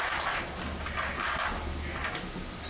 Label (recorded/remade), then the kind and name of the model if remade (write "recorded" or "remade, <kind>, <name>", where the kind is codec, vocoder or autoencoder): recorded